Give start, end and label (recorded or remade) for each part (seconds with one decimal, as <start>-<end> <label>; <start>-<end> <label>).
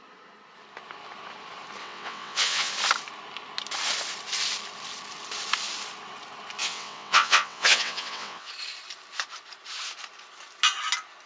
0.0-1.8 recorded; 1.8-2.7 remade; 2.7-6.6 recorded; 6.6-8.5 remade; 8.5-11.3 recorded